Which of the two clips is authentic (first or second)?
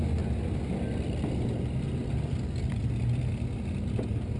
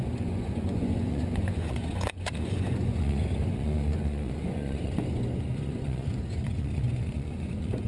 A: first